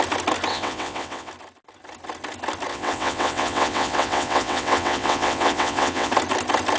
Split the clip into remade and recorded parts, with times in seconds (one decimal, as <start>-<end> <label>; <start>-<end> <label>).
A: 0.0-0.5 recorded; 0.5-1.3 remade; 1.3-2.7 recorded; 2.7-6.1 remade; 6.1-6.8 recorded